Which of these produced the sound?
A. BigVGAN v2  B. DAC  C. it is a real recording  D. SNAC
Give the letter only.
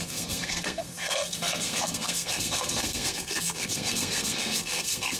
D